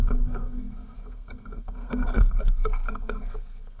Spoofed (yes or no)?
yes